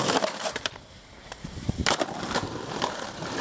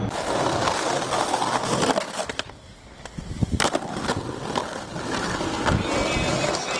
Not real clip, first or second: first